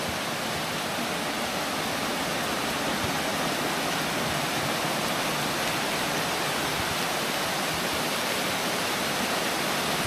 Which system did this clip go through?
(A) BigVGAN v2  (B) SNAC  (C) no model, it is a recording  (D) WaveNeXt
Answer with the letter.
C